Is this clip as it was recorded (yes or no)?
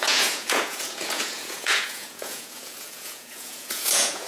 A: no